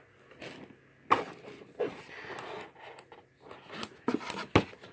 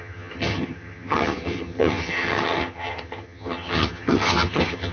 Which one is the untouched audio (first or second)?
first